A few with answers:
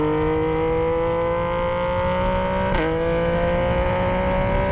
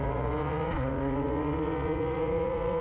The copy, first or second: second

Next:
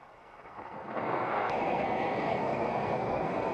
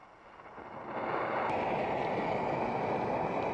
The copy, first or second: first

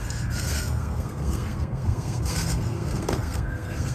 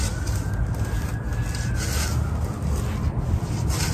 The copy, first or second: first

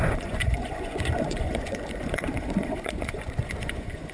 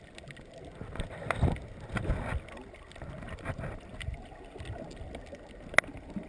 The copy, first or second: first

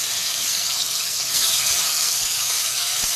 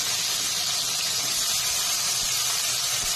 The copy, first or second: first